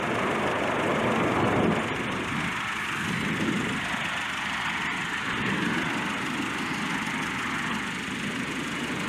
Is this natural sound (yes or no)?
yes